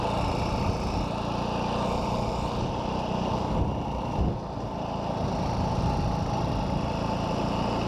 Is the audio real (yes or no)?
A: yes